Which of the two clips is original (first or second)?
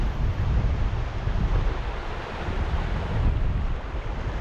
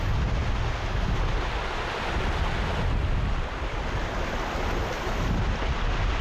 second